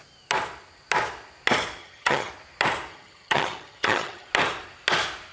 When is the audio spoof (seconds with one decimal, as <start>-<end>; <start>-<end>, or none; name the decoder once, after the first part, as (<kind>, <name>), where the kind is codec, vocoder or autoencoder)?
1.8-2.3 (vocoder, HiFi-GAN); 2.9-4.3